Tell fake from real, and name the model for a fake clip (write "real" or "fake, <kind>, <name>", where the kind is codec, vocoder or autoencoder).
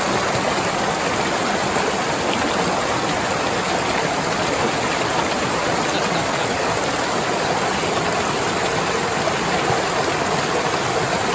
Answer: real